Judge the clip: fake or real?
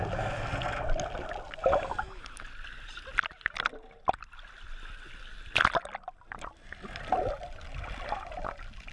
real